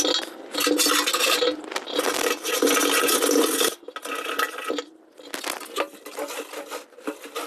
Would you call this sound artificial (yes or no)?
no